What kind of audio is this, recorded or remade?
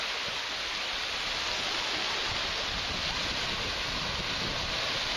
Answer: recorded